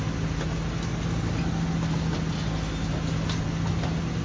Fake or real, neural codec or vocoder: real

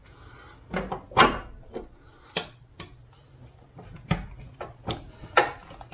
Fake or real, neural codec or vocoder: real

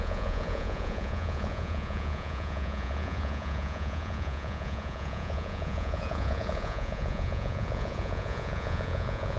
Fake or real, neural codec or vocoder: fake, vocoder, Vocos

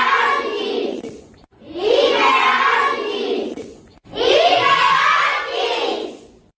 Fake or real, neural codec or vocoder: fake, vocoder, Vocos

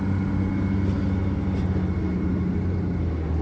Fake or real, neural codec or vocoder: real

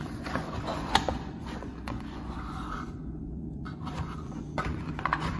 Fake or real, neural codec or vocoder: fake, vocoder, Vocos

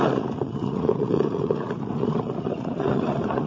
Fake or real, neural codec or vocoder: fake, vocoder, Vocos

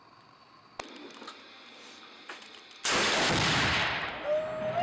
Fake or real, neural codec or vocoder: real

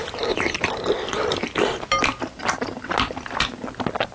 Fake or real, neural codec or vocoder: real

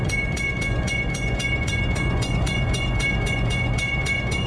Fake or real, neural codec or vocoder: fake, vocoder, Vocos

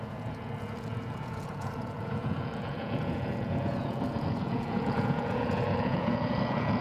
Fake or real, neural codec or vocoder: fake, vocoder, Vocos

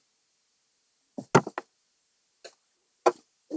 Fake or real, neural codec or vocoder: real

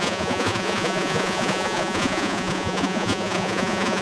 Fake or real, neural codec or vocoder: fake, vocoder, Vocos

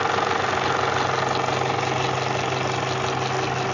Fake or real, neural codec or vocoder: real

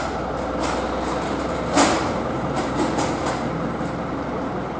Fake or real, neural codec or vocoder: real